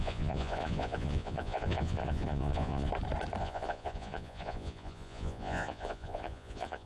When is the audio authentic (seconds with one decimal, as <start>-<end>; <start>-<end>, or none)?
2.9-3.4